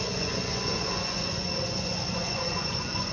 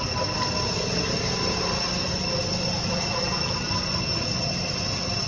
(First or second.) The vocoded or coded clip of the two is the first